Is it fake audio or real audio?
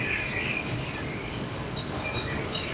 fake